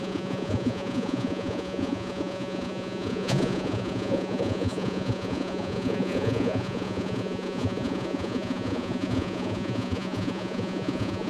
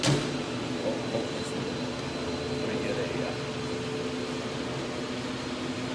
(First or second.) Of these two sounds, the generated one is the first